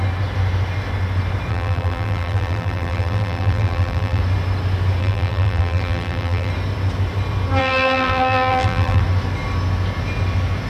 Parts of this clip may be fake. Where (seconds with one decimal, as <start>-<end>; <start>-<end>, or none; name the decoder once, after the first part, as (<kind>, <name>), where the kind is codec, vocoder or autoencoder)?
1.5-4.2 (vocoder, BigVGAN v2); 5.0-6.5; 7.6-9.0